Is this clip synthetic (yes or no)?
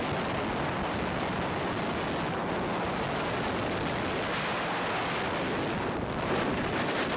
no